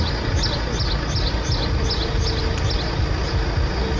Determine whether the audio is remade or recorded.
recorded